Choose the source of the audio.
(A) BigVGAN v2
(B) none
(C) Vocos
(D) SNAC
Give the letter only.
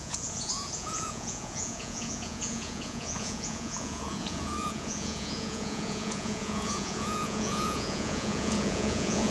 C